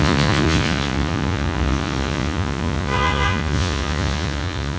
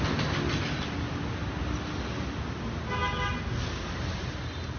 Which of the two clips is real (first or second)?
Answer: second